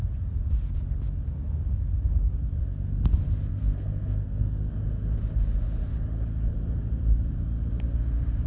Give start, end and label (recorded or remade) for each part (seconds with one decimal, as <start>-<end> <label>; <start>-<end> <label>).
0.0-3.5 recorded; 3.5-4.7 remade; 4.7-8.5 recorded